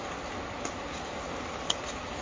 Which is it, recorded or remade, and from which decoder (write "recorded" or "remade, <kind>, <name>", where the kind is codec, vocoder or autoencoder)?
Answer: recorded